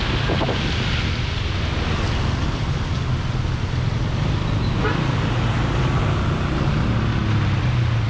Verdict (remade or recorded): recorded